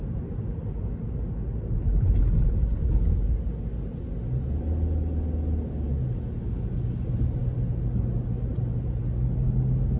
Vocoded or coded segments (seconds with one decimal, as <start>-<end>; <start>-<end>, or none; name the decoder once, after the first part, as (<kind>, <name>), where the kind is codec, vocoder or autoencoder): none